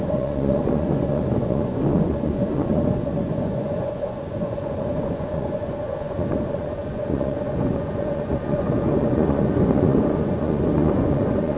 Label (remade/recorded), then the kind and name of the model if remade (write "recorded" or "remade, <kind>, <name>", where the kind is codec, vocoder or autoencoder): remade, vocoder, Vocos